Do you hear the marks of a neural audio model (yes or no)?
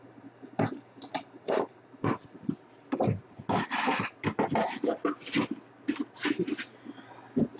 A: no